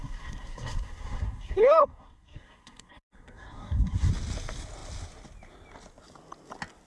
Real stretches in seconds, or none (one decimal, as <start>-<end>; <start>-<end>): 4.1-6.9